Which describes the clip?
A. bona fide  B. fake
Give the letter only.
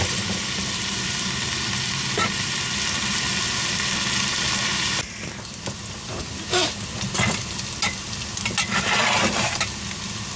A